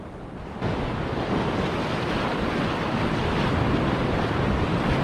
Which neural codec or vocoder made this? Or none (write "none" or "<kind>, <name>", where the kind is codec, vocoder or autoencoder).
none